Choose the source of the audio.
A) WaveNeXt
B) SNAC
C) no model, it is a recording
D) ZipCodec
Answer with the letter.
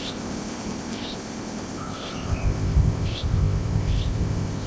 D